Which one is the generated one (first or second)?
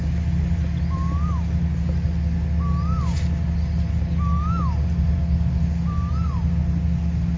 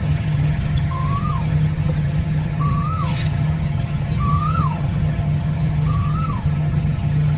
second